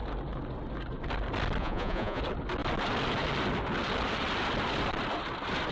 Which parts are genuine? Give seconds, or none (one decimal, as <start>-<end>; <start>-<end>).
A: 0.0-1.6; 2.2-5.7